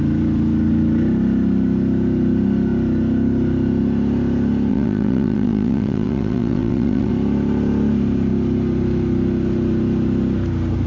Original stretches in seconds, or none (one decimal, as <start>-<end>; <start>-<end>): 0.0-4.7; 7.1-10.9

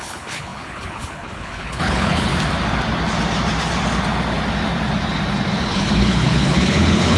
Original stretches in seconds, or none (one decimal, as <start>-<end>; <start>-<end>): 2.3-5.7

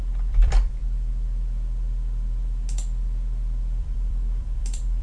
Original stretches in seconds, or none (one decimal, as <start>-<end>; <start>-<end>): 0.8-3.8